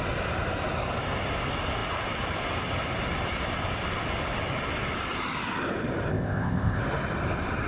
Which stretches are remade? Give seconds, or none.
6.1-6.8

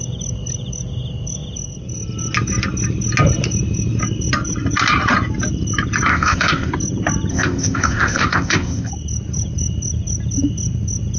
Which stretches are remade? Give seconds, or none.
6.1-6.7; 7.3-8.9

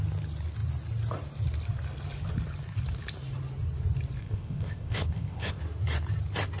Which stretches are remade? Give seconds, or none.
4.2-5.6

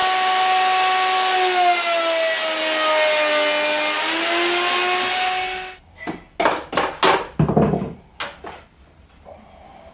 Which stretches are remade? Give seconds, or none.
none

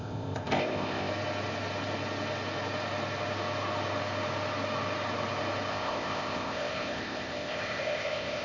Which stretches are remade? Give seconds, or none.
0.0-1.1; 5.7-8.4

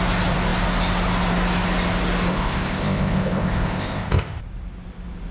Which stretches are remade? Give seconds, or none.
2.3-4.4